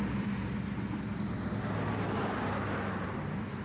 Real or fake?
real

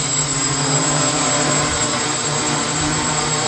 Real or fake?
fake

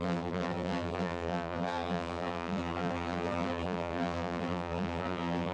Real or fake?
fake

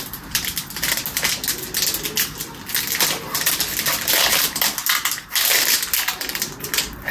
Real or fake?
real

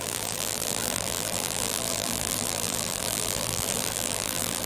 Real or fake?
fake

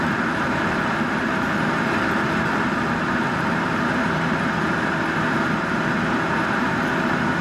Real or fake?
fake